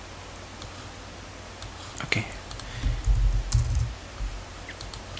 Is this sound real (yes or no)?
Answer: yes